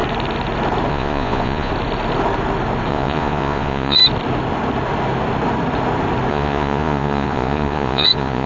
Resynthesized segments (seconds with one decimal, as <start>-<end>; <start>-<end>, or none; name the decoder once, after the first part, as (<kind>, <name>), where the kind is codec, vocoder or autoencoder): 0.9-1.7 (vocoder, Vocos); 2.9-4.0; 6.3-8.5